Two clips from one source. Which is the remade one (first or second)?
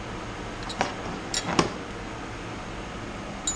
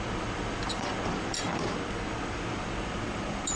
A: second